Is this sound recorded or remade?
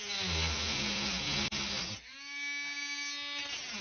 recorded